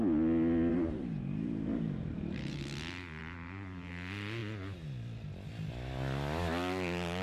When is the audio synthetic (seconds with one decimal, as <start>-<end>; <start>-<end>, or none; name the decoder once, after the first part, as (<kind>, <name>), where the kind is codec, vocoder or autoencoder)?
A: 0.7-2.6 (vocoder, BigVGAN v2); 3.2-3.9